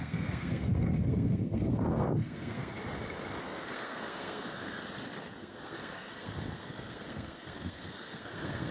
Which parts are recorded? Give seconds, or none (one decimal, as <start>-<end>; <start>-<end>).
2.8-3.4; 4.8-5.4